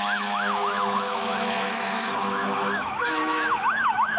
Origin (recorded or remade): remade